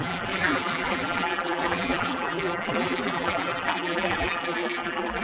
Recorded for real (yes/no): no